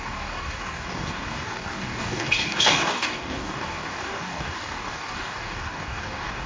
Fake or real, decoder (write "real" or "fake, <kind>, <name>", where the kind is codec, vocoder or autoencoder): fake, codec, DAC